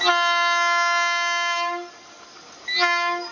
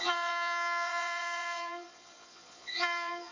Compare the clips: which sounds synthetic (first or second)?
second